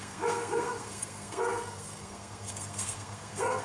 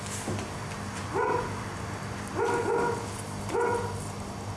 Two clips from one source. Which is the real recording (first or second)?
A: second